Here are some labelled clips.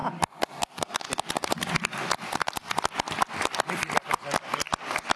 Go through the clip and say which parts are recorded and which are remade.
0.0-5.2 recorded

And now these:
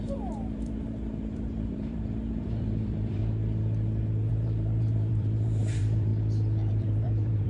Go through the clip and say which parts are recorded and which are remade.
0.0-3.2 remade; 3.2-4.3 recorded; 4.3-6.1 remade; 6.1-6.7 recorded; 6.7-7.5 remade

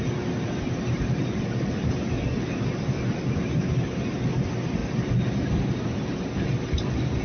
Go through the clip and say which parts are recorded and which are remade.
0.0-7.2 recorded

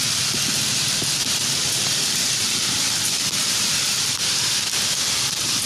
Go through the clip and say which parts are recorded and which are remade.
0.0-1.2 recorded; 1.2-4.6 remade; 4.6-5.7 recorded

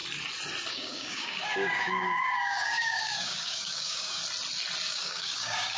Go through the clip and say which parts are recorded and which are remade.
0.0-0.7 recorded; 0.7-4.2 remade; 4.2-4.9 recorded; 4.9-5.8 remade